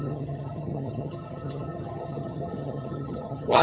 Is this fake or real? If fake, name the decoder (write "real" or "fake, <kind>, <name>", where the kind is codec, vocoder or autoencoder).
fake, vocoder, HiFi-GAN